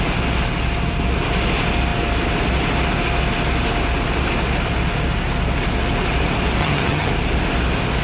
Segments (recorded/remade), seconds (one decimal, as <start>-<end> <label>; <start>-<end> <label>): 0.0-6.6 recorded; 6.6-7.1 remade; 7.1-8.0 recorded